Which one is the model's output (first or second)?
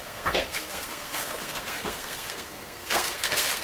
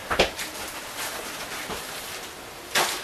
first